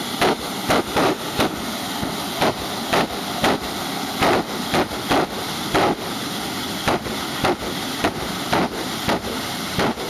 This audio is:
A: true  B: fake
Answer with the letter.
A